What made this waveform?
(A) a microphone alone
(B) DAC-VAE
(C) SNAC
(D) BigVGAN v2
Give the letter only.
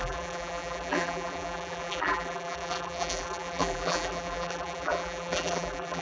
D